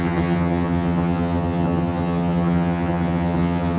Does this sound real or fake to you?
fake